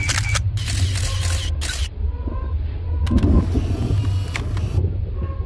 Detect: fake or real real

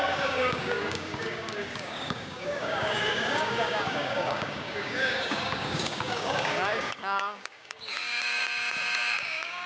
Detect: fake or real fake